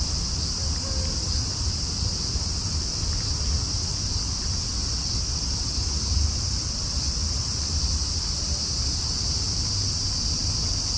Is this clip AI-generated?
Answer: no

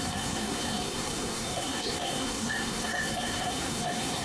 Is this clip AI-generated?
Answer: yes